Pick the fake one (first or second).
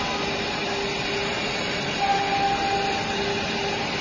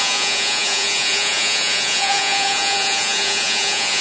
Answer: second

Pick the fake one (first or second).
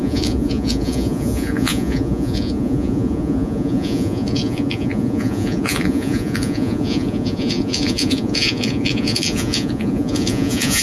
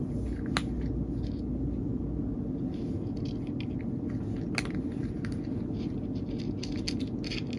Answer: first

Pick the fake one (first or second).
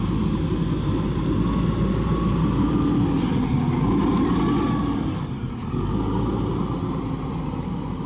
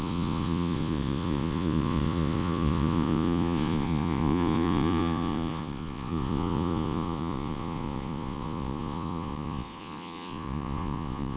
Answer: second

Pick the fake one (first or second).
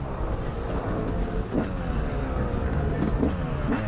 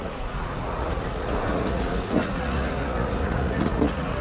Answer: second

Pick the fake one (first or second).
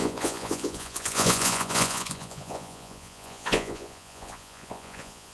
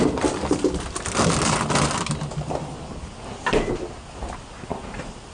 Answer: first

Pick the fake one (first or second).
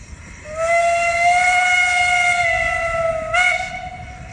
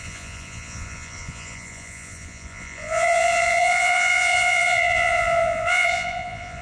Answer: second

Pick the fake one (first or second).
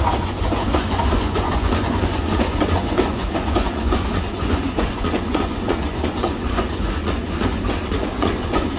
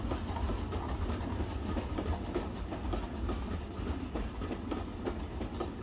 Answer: first